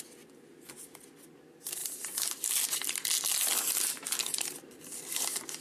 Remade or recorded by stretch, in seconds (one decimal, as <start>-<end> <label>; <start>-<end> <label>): 0.0-1.8 recorded; 1.8-5.6 remade